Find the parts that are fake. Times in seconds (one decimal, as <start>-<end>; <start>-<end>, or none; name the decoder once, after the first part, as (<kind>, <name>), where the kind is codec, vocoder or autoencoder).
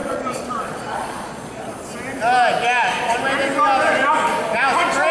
0.0-1.7 (vocoder, Vocos)